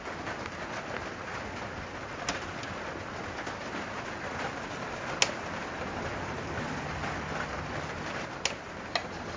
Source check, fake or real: real